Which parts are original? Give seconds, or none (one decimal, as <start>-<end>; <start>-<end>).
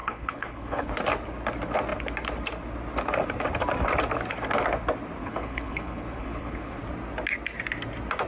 0.9-5.2; 6.8-8.3